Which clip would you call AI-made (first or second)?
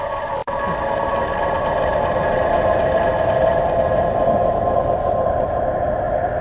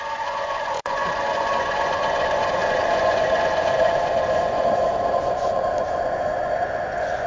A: second